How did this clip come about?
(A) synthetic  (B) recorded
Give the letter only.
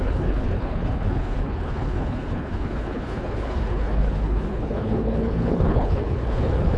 A